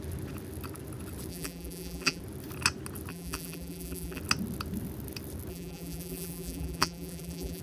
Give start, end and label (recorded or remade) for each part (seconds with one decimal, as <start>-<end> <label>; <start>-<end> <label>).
0.0-1.3 recorded; 1.3-2.2 remade; 2.2-3.1 recorded; 3.1-4.2 remade; 4.2-5.5 recorded; 5.5-7.6 remade